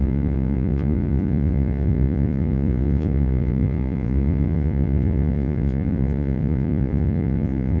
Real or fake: fake